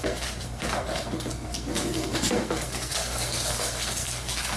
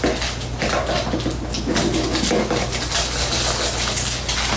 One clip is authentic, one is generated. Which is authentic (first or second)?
second